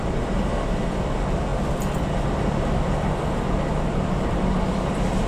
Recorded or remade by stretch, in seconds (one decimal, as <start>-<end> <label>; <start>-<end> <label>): 0.0-5.3 recorded